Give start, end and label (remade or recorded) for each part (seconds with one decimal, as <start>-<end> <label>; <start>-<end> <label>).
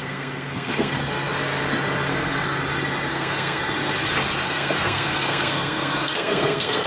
0.0-1.3 remade; 1.3-2.1 recorded; 2.1-2.6 remade; 2.6-3.1 recorded; 3.1-3.6 remade; 3.6-4.4 recorded; 4.4-6.9 remade